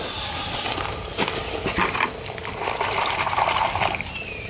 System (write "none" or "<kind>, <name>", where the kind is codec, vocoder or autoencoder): none